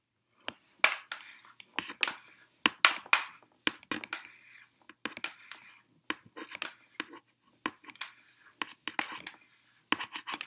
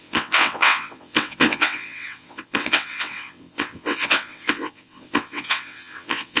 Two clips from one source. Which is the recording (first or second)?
first